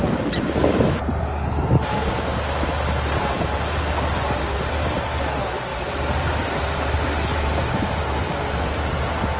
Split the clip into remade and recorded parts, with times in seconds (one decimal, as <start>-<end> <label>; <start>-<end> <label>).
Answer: 0.0-5.7 recorded; 5.7-6.6 remade; 6.6-7.3 recorded; 7.3-7.8 remade; 7.8-9.4 recorded